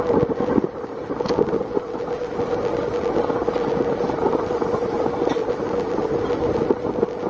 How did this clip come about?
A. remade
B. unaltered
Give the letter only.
B